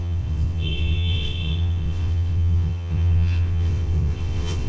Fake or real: fake